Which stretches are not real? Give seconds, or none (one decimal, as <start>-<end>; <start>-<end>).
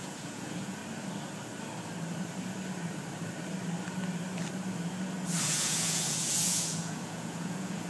0.0-0.8; 5.4-7.9